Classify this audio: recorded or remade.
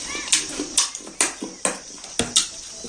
recorded